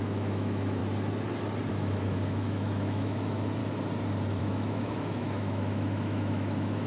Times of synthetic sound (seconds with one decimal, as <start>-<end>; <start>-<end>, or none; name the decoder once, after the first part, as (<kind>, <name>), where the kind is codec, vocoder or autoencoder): 0.0-0.8 (autoencoder, DAC-VAE); 1.7-3.6; 4.4-6.9